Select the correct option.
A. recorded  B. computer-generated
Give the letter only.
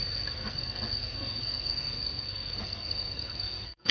B